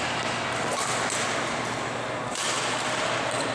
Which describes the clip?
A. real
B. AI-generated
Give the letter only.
A